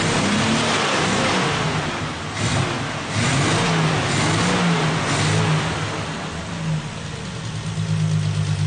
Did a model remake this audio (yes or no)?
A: no